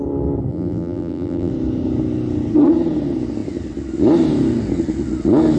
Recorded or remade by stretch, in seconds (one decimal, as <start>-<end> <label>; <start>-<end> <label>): 0.0-0.5 recorded; 0.5-1.5 remade; 1.5-5.6 recorded